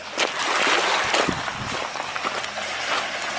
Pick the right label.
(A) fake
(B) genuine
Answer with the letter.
B